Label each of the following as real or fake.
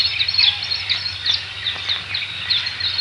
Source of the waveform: real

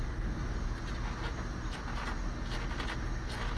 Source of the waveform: real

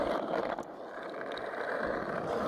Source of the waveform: fake